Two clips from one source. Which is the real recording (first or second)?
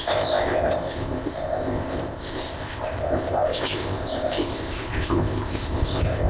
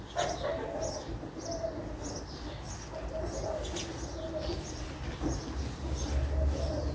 second